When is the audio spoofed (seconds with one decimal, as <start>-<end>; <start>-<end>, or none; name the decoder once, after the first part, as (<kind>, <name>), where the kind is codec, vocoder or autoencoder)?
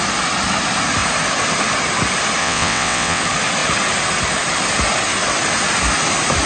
2.4-3.2 (vocoder, WaveNeXt)